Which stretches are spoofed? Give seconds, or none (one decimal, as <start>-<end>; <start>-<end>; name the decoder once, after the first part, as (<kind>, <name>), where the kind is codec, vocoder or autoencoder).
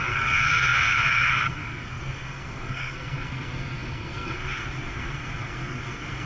0.0-6.3 (codec, SNAC)